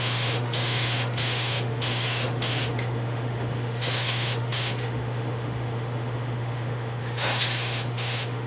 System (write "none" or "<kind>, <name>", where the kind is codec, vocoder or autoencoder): autoencoder, DAC-VAE